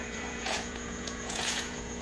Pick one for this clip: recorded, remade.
remade